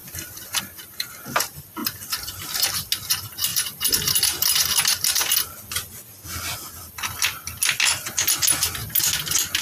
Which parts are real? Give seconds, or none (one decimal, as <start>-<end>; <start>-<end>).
0.6-1.8; 2.9-9.6